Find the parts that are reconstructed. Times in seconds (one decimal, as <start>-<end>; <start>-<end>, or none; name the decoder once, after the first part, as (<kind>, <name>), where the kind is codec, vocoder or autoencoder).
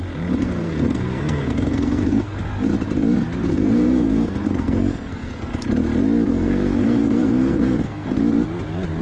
0.4-2.4 (codec, SNAC); 3.5-5.5; 6.3-8.2